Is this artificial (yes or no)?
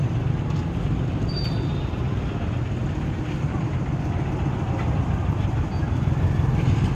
no